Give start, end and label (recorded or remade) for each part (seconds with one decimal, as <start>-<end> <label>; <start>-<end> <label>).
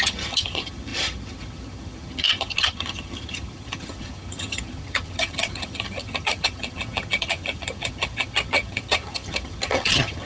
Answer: 0.0-10.3 remade